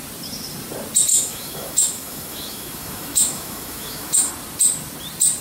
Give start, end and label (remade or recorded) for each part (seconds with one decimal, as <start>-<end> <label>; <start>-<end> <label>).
0.0-1.1 recorded; 1.1-4.3 remade; 4.3-5.4 recorded